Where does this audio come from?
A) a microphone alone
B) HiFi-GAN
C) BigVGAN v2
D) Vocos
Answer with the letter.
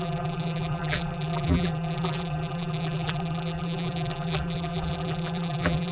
C